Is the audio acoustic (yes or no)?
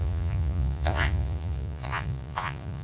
no